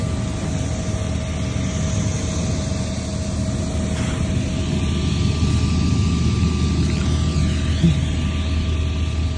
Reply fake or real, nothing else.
real